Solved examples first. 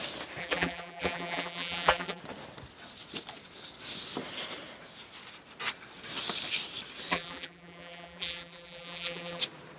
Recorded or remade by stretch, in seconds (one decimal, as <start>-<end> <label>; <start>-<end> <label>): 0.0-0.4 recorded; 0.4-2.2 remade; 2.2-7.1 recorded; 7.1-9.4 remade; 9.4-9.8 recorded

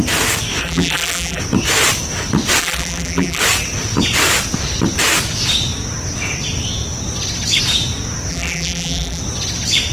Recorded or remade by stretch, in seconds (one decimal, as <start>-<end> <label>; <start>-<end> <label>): 0.0-0.6 recorded; 0.6-1.4 remade; 1.4-2.6 recorded; 2.6-3.4 remade; 3.4-8.3 recorded; 8.3-9.2 remade; 9.2-9.9 recorded

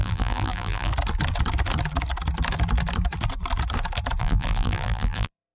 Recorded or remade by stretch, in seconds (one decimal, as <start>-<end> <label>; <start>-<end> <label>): 0.0-0.9 remade; 0.9-4.2 recorded; 4.2-5.5 remade